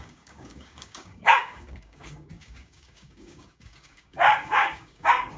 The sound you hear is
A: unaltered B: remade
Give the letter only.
B